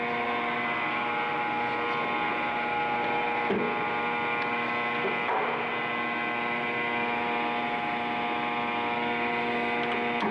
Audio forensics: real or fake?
real